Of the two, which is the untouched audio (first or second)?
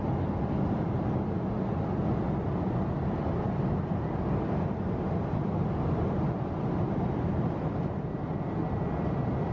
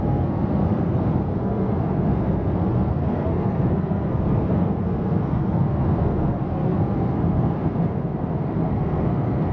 first